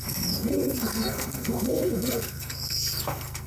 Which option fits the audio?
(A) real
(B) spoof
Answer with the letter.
B